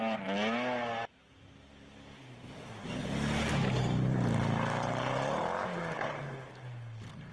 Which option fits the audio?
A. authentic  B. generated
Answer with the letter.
A